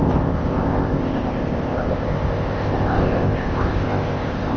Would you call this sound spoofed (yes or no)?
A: yes